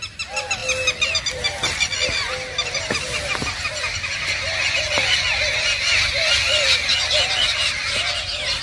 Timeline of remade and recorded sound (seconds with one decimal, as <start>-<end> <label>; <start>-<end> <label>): 0.0-8.6 recorded